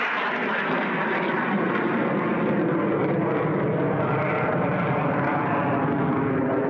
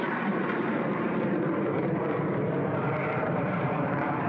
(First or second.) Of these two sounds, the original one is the first